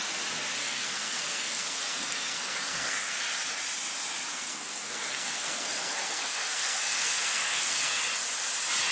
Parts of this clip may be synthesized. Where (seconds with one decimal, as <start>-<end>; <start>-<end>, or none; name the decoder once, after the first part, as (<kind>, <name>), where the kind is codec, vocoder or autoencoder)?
0.6-3.2 (codec, SNAC); 4.3-8.0